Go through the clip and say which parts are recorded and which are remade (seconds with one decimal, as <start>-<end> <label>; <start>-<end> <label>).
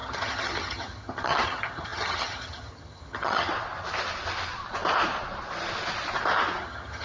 0.0-3.5 remade; 3.5-6.6 recorded; 6.6-7.0 remade